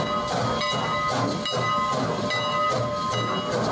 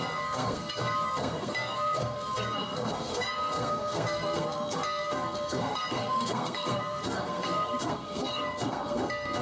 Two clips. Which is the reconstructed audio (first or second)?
second